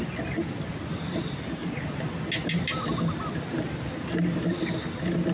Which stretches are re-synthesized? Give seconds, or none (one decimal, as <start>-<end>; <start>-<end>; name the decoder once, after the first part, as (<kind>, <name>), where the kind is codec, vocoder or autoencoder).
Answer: none